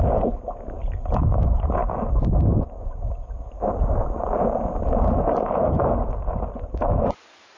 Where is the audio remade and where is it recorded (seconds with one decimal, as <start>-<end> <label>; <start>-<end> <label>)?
0.0-7.6 recorded